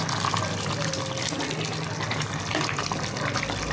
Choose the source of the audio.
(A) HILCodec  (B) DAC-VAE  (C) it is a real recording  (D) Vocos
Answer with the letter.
C